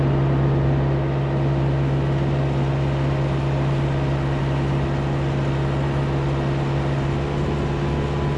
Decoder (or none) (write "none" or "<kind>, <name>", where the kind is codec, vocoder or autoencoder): none